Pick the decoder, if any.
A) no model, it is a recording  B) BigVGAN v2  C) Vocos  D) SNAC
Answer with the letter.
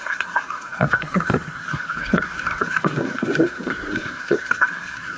D